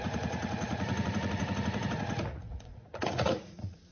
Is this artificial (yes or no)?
yes